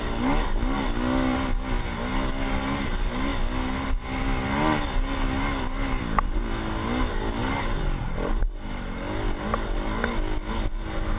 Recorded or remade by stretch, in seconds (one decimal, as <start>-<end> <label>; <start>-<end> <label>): 0.0-11.2 recorded